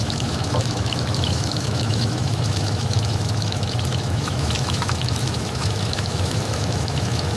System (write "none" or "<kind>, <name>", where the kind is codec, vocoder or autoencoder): autoencoder, DAC-VAE